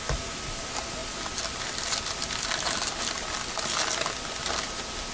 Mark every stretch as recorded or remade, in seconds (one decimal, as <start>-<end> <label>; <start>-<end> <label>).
0.0-5.1 recorded